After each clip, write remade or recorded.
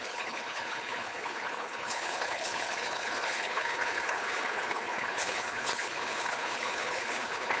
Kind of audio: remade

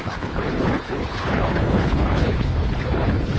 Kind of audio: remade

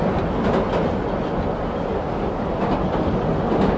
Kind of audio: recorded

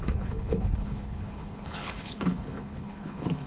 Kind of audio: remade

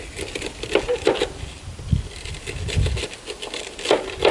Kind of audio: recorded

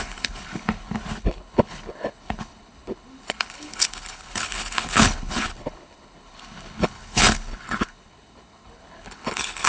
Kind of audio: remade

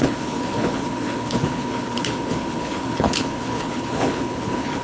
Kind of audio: remade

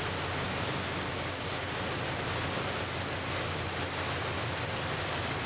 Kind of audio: recorded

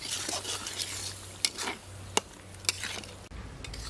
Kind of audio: recorded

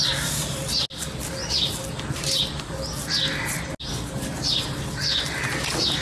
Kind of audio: recorded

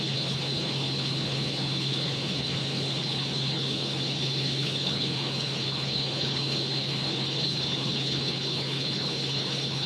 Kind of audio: remade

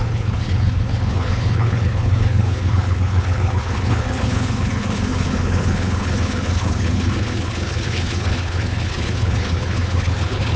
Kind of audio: remade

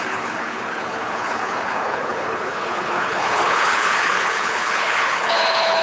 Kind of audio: remade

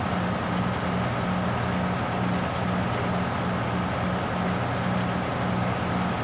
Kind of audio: recorded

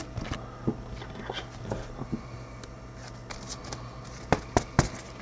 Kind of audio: recorded